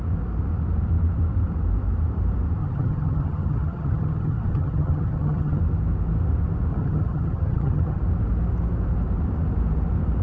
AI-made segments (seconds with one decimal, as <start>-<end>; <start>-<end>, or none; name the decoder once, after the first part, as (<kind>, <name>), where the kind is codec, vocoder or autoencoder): 2.6-5.6 (vocoder, HiFi-GAN); 6.7-8.0